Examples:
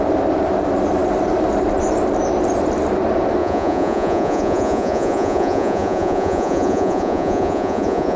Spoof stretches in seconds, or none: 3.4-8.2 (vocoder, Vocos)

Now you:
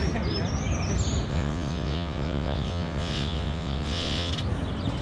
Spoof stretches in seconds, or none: 1.3-4.3 (vocoder, WaveNeXt)

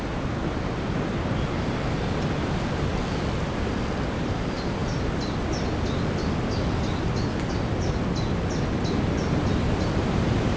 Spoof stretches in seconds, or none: none

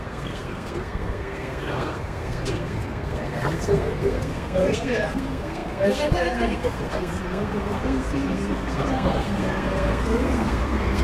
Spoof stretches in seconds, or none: 0.0-11.0 (codec, SNAC)

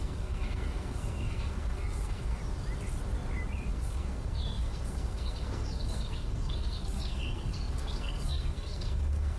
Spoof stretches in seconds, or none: 0.0-2.4 (codec, SNAC); 3.7-9.4

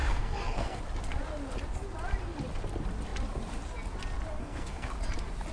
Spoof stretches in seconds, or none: 0.0-0.8 (codec, SNAC); 4.4-4.9